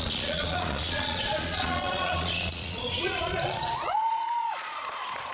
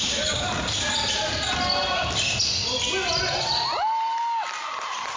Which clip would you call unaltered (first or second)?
second